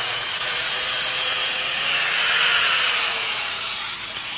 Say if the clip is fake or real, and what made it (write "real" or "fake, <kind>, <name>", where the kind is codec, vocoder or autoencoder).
fake, vocoder, Vocos